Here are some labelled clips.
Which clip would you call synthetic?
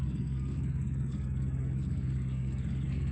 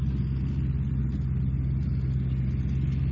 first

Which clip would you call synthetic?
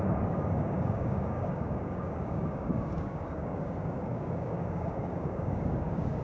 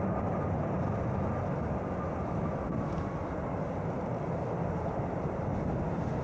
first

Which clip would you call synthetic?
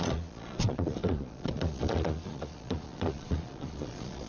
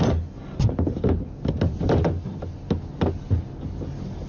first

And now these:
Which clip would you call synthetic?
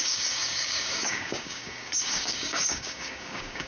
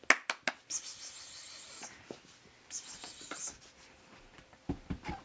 first